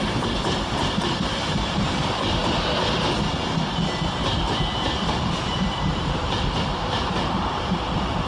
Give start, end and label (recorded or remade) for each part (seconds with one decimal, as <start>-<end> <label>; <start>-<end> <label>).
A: 0.0-2.4 remade; 2.4-5.1 recorded; 5.1-8.3 remade